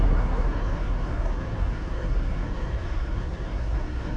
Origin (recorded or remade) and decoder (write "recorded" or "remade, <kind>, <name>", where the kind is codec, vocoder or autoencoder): remade, codec, SNAC